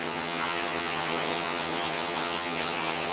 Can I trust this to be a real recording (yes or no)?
no